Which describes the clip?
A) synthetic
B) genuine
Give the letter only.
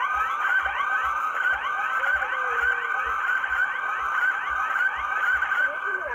B